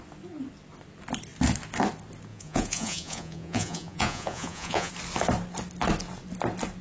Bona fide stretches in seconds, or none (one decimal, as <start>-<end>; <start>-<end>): 0.0-2.3; 4.9-6.8